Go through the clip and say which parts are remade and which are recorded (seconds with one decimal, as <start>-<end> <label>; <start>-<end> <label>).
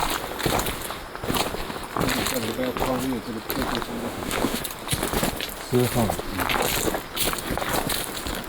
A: 0.0-3.8 recorded; 3.8-4.6 remade; 4.6-8.5 recorded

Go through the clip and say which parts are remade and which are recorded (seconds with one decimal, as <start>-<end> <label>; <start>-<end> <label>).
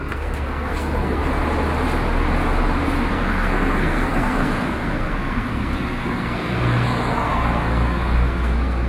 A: 0.0-1.2 remade; 1.2-3.1 recorded; 3.1-8.9 remade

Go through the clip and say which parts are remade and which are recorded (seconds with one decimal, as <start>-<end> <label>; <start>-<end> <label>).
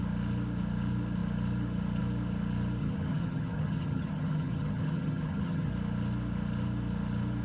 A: 0.0-2.8 recorded; 2.8-5.7 remade; 5.7-7.4 recorded